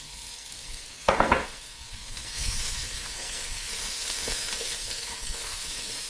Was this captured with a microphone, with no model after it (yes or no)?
no